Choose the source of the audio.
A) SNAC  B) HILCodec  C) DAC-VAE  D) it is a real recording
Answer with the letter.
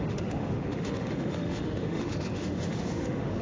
C